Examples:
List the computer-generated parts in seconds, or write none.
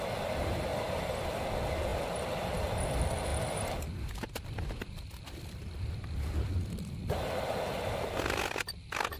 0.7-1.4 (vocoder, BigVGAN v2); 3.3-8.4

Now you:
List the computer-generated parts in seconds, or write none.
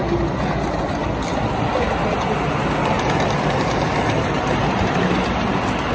2.8-5.3 (vocoder, BigVGAN v2)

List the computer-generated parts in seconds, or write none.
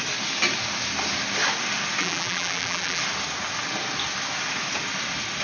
2.0-3.0 (vocoder, BigVGAN v2)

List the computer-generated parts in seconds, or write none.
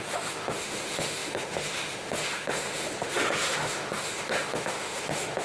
0.0-5.4 (autoencoder, DAC-VAE)